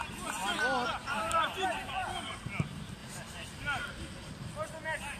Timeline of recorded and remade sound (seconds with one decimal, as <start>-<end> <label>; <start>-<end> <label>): 0.0-1.0 recorded; 1.0-1.9 remade; 1.9-3.0 recorded; 3.0-4.3 remade; 4.3-5.2 recorded

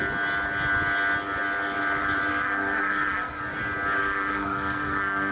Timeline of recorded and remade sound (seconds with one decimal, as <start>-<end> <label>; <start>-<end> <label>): 0.0-2.3 recorded; 2.3-3.4 remade; 3.4-4.0 recorded; 4.0-5.3 remade

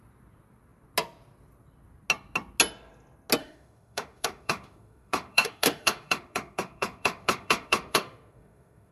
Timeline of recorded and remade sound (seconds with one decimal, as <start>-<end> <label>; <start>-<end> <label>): 0.0-3.4 recorded; 3.4-8.9 remade